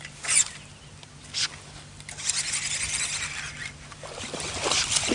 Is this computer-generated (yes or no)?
no